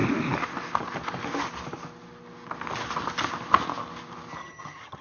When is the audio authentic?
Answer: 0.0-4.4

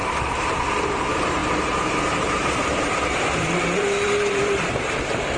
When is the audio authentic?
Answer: none